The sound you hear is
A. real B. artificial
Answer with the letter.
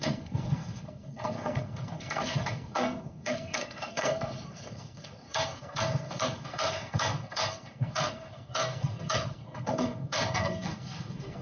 B